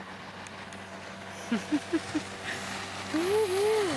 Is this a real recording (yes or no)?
yes